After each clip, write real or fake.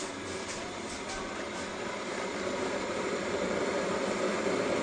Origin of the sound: real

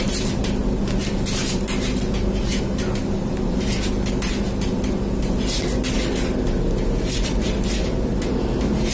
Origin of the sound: real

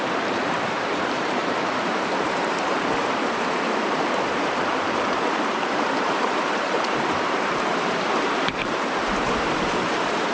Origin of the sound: fake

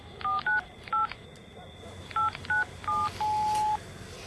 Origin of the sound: real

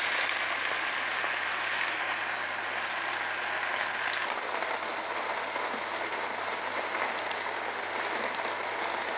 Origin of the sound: real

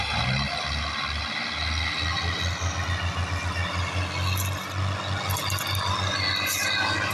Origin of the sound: real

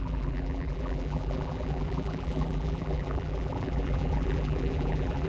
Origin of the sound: fake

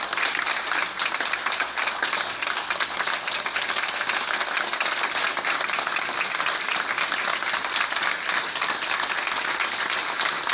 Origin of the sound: real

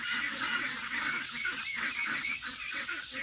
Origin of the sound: fake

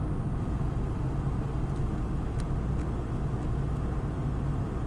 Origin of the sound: real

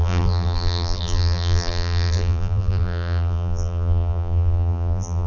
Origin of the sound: fake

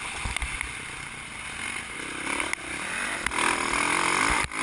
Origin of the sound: real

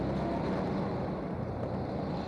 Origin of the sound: real